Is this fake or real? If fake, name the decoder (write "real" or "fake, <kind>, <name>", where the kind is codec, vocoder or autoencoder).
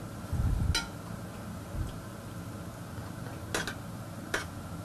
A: real